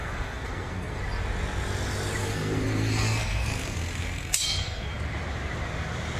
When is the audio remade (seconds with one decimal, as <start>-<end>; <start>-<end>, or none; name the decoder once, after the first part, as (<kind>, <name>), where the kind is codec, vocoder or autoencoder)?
0.0-1.0 (codec, SNAC); 2.2-4.9